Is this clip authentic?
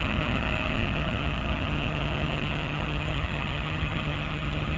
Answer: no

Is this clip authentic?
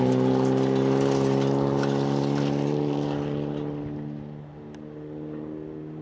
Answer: yes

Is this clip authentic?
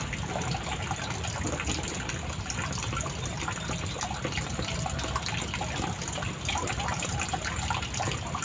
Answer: yes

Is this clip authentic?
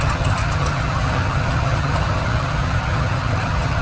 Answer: no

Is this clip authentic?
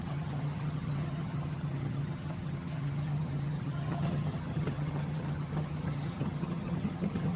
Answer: no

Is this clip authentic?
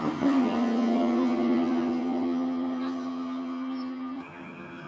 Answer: no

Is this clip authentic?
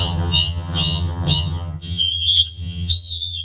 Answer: no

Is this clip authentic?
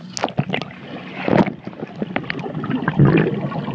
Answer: yes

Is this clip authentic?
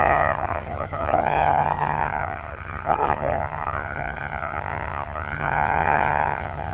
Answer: no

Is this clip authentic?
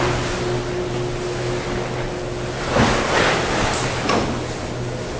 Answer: yes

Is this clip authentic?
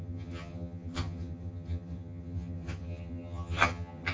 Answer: no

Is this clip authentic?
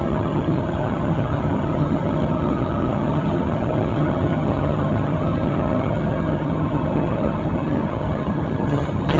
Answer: no